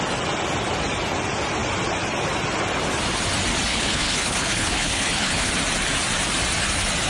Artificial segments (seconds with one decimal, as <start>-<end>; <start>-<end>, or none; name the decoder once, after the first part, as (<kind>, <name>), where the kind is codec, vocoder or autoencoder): 3.7-5.5 (codec, HILCodec)